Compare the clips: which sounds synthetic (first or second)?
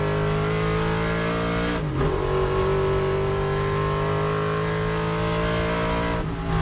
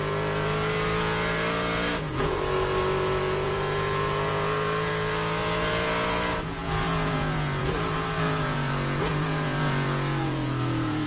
second